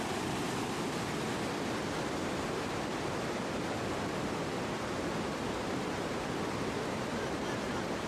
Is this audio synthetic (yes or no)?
no